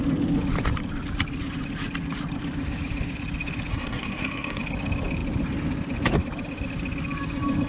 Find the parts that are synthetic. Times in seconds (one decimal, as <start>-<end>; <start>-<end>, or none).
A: 3.7-4.6